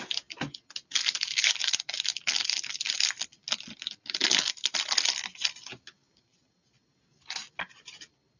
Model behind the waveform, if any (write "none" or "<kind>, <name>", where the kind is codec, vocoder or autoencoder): none